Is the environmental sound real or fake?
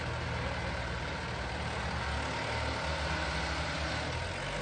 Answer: real